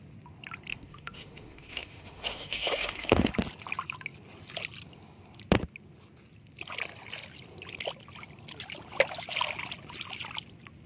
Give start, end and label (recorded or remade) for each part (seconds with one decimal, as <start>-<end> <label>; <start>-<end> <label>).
0.0-0.7 recorded; 0.7-3.3 remade; 3.3-10.9 recorded